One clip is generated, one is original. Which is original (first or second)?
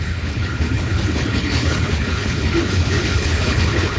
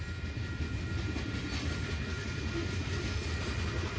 second